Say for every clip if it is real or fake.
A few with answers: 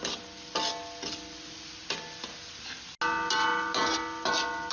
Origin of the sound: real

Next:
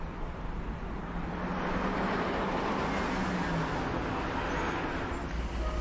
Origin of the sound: real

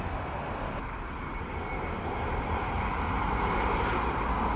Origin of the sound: real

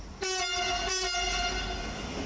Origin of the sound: real